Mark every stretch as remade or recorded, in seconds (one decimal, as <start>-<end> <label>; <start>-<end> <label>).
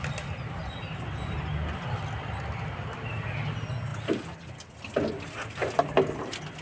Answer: 0.0-6.6 recorded